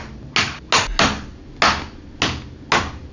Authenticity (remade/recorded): recorded